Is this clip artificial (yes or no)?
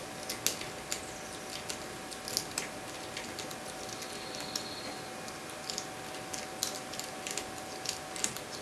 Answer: no